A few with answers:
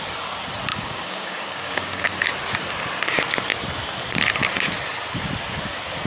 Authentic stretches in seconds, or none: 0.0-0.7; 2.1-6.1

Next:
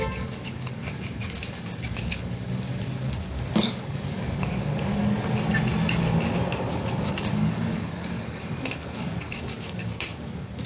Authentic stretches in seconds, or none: 5.0-6.7

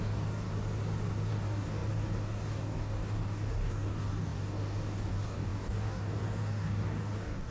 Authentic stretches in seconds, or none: 0.5-1.3

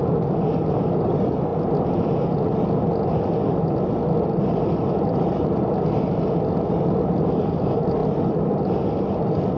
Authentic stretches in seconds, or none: 0.0-9.6